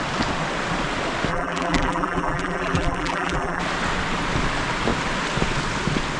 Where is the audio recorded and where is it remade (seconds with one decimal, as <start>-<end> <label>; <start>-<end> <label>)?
0.0-1.3 recorded; 1.3-3.6 remade; 3.6-6.2 recorded